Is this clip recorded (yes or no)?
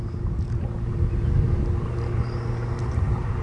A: yes